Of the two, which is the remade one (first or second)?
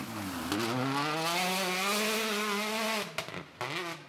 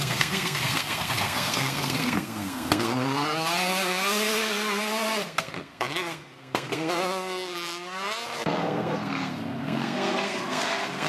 second